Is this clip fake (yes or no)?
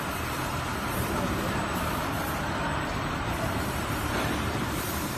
yes